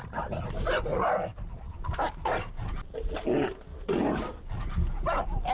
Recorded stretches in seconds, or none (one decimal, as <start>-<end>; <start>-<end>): 0.0-1.3; 2.7-3.7; 4.3-5.5